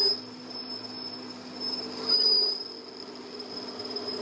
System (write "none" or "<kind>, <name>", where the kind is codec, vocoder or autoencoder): none